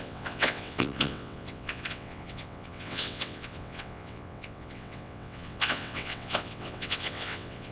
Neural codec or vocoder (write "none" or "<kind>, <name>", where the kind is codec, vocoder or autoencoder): vocoder, WaveNeXt